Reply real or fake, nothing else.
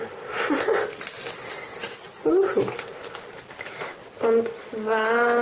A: real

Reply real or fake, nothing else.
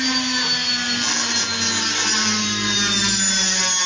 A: real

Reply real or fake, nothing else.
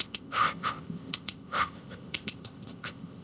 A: fake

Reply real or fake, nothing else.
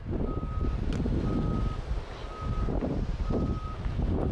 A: real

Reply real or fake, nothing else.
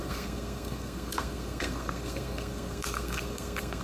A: fake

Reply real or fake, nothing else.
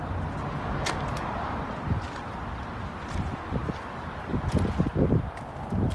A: real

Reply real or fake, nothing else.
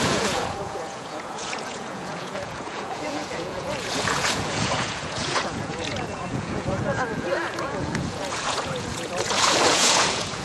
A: fake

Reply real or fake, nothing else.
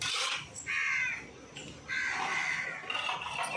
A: real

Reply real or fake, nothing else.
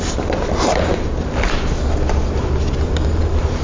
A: real